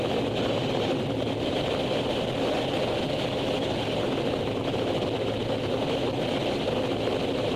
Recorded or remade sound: recorded